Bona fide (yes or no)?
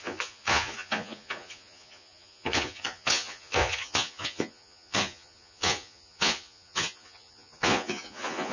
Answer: no